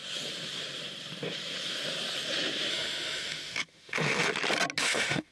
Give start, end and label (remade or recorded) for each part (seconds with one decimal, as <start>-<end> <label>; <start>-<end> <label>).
0.0-2.7 recorded; 2.7-4.3 remade; 4.3-4.8 recorded; 4.8-5.3 remade

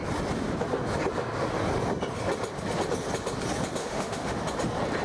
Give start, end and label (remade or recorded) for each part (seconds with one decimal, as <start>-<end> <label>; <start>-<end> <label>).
0.0-3.8 recorded; 3.8-4.4 remade; 4.4-5.0 recorded

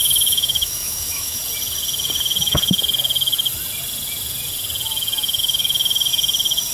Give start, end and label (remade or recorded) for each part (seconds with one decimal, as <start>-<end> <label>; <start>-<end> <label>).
0.0-1.4 remade; 1.4-5.4 recorded; 5.4-6.1 remade; 6.1-6.7 recorded

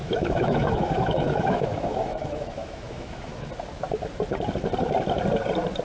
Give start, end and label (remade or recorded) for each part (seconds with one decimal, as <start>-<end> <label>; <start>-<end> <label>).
0.0-3.5 remade; 3.5-5.8 recorded

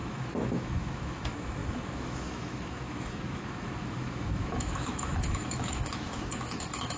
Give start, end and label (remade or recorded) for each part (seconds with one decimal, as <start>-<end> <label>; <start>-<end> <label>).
0.0-7.0 remade

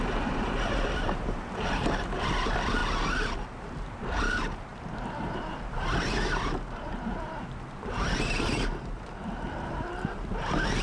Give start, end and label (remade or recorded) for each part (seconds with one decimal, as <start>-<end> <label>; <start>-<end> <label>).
0.0-10.8 recorded

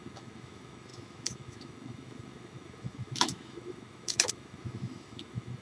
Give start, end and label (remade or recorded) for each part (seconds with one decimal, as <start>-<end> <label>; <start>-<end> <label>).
0.0-5.6 remade

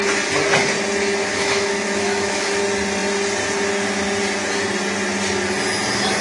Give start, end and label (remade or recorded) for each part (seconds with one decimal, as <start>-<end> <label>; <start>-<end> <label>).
0.0-1.2 recorded; 1.2-2.6 remade; 2.6-6.2 recorded